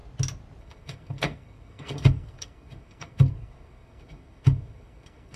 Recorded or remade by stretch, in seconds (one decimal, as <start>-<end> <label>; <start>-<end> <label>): 0.0-0.6 recorded; 0.6-5.4 remade